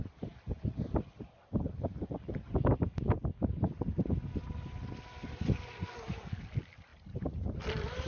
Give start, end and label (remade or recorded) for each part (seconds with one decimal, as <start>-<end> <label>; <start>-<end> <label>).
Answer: 0.0-8.1 recorded